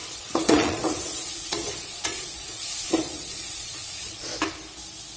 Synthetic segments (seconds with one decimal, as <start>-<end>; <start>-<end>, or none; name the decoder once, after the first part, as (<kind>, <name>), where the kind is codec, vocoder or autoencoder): 0.0-4.3 (vocoder, Vocos)